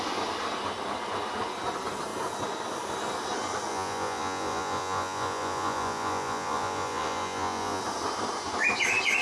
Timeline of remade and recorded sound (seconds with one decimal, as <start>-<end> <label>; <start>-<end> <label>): 0.0-3.7 recorded; 3.7-7.8 remade; 7.8-9.2 recorded